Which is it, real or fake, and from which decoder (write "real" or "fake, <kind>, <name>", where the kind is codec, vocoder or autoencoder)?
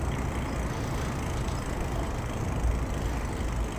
real